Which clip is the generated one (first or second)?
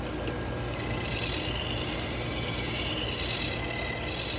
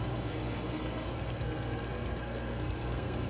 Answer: second